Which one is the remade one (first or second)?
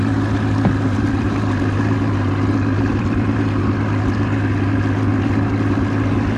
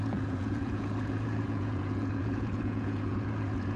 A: second